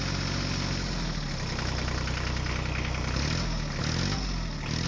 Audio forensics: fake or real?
real